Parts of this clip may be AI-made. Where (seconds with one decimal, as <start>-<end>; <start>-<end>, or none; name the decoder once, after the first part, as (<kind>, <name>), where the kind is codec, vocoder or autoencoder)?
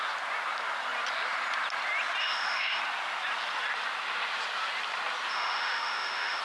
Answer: 2.2-2.8 (autoencoder, DAC-VAE); 5.3-6.4